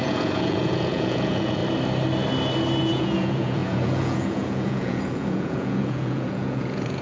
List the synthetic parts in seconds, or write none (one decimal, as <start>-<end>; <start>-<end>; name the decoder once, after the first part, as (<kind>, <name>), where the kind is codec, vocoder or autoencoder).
0.0-1.6 (vocoder, Vocos); 2.8-7.0